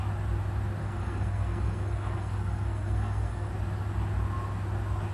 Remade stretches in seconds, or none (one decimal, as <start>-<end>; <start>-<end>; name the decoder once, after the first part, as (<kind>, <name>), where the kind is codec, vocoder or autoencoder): 0.8-3.5 (codec, SNAC)